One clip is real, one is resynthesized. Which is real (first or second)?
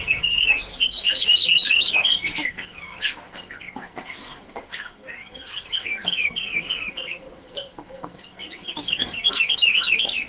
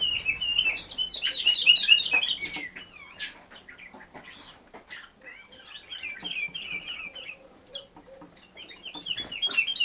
second